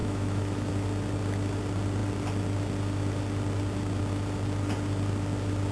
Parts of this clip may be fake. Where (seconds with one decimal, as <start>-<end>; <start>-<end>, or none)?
0.0-0.7